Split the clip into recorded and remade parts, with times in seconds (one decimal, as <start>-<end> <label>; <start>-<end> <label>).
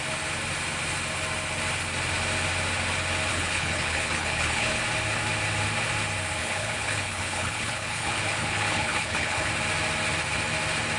0.0-3.3 recorded; 3.3-4.8 remade; 4.8-6.4 recorded; 6.4-9.5 remade; 9.5-11.0 recorded